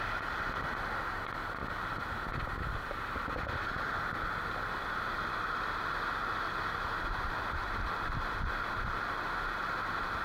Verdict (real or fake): real